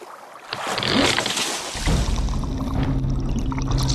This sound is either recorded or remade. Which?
recorded